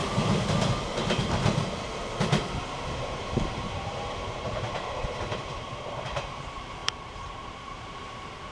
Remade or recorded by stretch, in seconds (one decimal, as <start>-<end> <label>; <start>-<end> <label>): 0.0-2.9 recorded; 2.9-8.5 remade